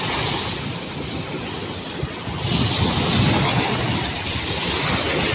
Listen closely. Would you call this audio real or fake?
real